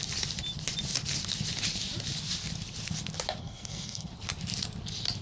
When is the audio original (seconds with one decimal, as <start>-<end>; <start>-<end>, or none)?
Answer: 0.0-3.4; 4.1-5.2